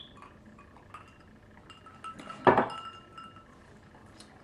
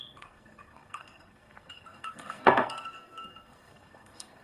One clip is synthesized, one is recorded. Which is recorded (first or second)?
first